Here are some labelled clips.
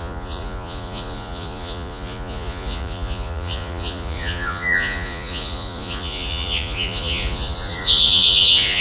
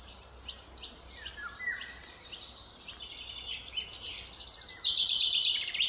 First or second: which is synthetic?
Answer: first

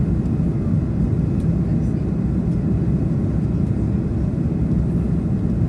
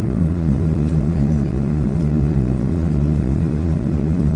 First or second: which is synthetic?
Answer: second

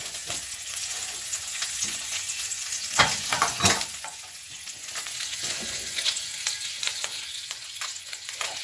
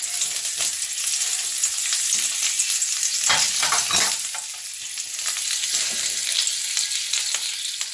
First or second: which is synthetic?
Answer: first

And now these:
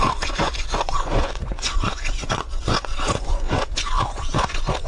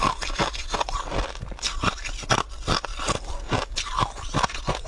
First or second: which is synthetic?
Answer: first